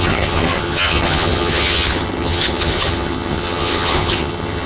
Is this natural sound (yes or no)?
no